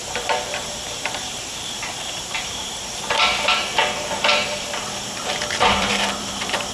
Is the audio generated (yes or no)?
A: yes